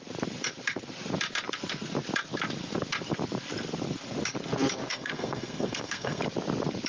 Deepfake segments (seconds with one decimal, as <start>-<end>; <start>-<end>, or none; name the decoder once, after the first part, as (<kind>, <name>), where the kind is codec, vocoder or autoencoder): 4.9-6.2 (codec, SNAC)